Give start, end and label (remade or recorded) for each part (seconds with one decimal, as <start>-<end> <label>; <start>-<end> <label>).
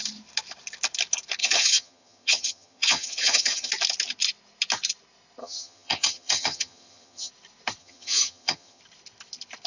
0.0-1.4 recorded; 1.4-3.7 remade; 3.7-5.4 recorded; 5.4-7.3 remade; 7.3-7.8 recorded; 7.8-8.8 remade; 8.8-9.7 recorded